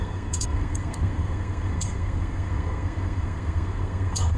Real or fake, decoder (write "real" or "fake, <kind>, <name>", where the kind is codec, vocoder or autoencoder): fake, codec, SNAC